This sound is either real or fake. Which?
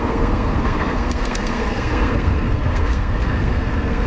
fake